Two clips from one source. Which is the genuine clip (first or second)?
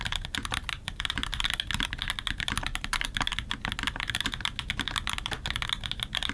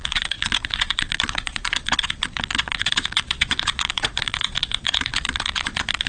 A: first